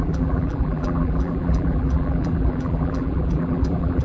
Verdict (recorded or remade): remade